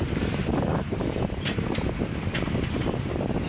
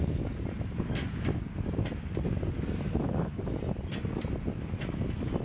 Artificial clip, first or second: first